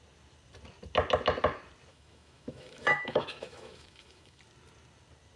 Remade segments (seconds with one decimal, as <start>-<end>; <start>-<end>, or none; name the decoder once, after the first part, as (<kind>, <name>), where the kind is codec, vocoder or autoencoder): 1.9-4.4 (autoencoder, DAC-VAE)